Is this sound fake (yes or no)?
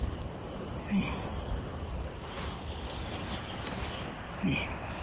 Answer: no